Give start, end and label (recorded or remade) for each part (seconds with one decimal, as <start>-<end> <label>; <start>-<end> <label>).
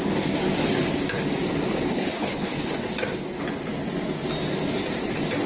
0.0-1.9 recorded; 1.9-2.7 remade; 2.7-5.5 recorded